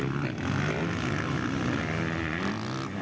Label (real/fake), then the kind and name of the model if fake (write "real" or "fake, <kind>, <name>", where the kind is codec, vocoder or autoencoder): real